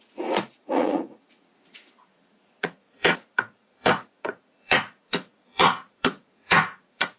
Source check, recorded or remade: remade